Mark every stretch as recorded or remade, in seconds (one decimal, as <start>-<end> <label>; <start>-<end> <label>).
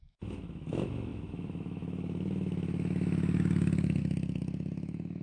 0.0-5.2 remade